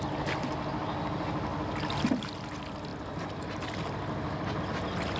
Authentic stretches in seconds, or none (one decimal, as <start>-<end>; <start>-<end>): 0.0-5.2